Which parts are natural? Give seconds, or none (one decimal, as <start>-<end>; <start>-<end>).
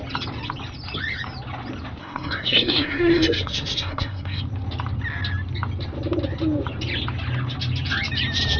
0.0-2.0; 4.4-8.6